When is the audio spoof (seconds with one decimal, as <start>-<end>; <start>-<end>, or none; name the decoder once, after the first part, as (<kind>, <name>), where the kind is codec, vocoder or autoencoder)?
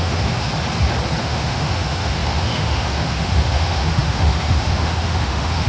0.0-0.5 (autoencoder, DAC-VAE); 1.2-5.7